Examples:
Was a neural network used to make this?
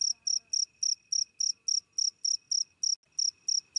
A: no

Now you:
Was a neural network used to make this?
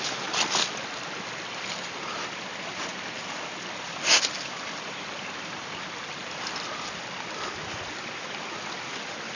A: no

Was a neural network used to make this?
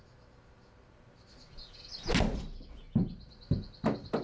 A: no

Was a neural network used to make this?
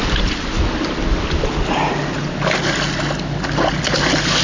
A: no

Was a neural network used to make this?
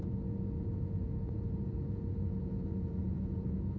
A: yes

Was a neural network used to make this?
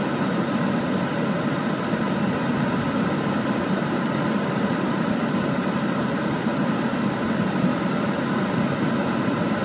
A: no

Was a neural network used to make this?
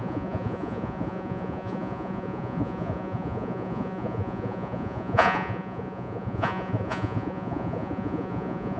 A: yes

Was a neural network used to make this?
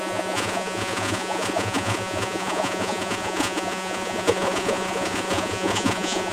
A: yes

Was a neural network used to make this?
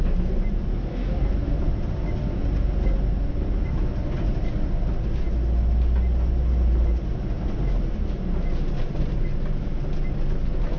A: no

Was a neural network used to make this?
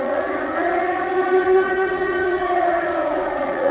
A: yes